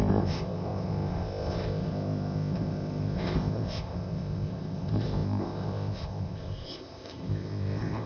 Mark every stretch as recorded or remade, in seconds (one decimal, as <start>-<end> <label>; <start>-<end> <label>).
0.0-8.1 remade

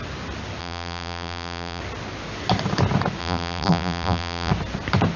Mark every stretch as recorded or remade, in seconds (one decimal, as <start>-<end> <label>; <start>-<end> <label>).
0.0-0.6 recorded; 0.6-1.8 remade; 1.8-3.2 recorded; 3.2-4.5 remade; 4.5-5.2 recorded

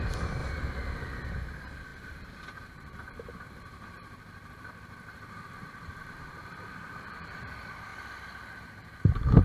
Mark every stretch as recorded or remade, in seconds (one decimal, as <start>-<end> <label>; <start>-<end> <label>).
0.0-0.4 remade; 0.4-1.3 recorded; 1.3-7.9 remade; 7.9-8.6 recorded; 8.6-9.4 remade

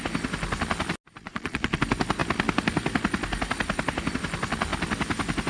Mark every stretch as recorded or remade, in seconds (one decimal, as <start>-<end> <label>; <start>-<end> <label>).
0.0-1.2 recorded; 1.2-1.8 remade; 1.8-5.5 recorded

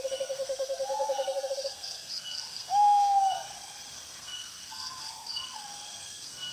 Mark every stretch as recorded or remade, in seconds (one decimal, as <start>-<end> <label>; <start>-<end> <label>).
0.0-6.5 remade

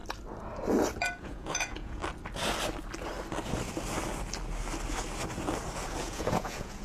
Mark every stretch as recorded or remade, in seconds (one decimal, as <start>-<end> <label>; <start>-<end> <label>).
0.0-1.2 recorded; 1.2-2.0 remade; 2.0-6.0 recorded; 6.0-6.8 remade

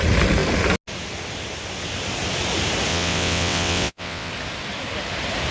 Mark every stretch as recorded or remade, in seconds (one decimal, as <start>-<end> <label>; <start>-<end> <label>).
0.0-2.9 recorded; 2.9-4.3 remade; 4.3-5.5 recorded